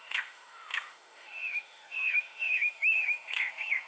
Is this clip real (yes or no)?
no